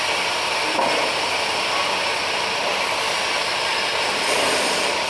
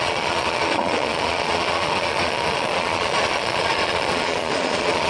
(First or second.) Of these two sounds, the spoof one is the second